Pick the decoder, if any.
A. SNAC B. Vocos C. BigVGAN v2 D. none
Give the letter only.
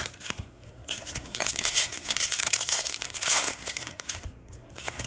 A